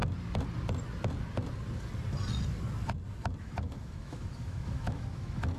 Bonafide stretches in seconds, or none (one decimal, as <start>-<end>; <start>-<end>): 0.0-3.4